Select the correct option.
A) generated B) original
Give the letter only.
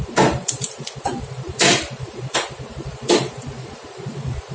A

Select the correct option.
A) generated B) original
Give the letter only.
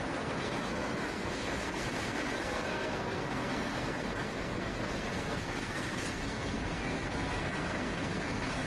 A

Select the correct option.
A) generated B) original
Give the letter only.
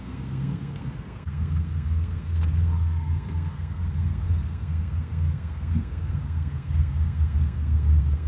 A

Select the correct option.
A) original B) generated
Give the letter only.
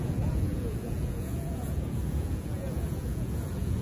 B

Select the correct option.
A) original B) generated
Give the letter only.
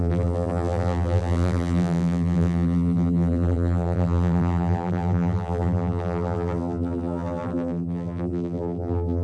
B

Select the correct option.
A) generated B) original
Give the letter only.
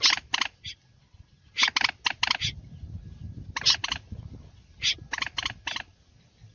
B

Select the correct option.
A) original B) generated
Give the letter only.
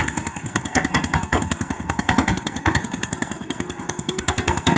B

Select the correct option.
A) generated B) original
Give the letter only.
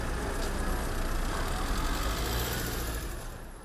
B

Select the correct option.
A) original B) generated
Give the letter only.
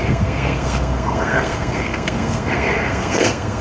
B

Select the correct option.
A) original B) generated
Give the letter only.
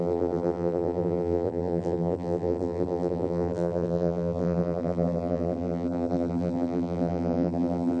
B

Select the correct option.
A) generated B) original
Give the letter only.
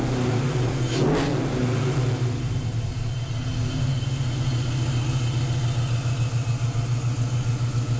B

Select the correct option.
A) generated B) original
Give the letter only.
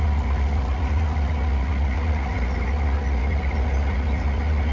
A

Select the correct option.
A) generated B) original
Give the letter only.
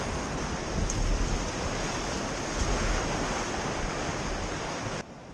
B